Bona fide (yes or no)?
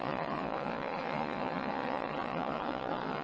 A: no